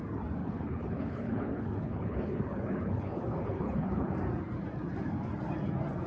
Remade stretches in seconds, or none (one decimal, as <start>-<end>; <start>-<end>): 0.4-4.1